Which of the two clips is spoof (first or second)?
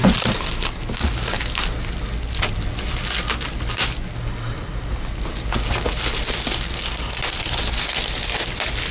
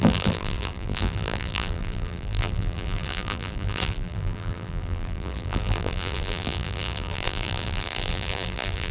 second